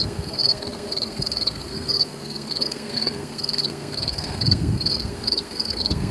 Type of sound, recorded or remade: remade